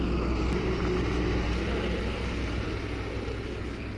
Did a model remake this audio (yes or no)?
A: no